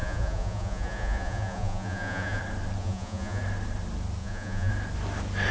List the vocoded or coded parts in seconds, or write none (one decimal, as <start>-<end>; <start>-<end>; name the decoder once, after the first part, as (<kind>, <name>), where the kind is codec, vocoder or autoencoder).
0.0-2.4 (vocoder, Vocos); 2.8-3.4; 4.2-4.7